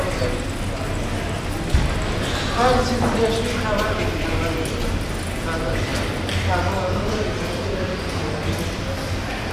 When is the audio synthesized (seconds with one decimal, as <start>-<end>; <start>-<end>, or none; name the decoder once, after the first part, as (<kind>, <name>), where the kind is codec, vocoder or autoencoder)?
none